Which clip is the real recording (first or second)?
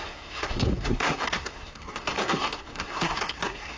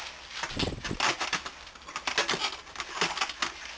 second